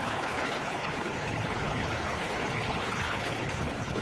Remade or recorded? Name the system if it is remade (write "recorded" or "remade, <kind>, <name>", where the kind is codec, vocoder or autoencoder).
remade, codec, HILCodec